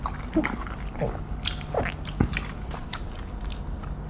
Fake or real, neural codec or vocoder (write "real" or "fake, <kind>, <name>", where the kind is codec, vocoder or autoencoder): real